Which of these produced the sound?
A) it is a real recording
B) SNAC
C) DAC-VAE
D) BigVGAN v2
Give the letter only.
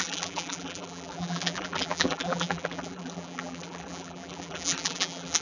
D